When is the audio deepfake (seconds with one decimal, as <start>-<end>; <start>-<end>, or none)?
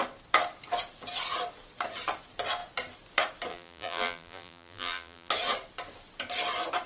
3.5-5.3